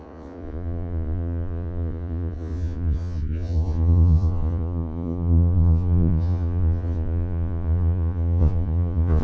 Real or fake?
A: fake